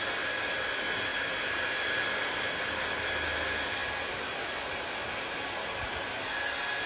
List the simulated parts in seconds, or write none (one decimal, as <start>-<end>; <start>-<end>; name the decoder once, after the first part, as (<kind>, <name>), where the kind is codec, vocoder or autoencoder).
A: 3.8-6.3 (vocoder, BigVGAN v2)